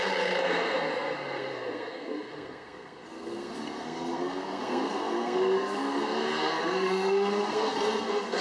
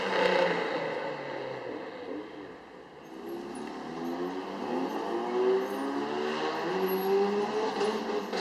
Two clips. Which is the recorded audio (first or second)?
second